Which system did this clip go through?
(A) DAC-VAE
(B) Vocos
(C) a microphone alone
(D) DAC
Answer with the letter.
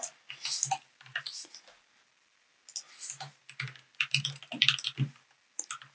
C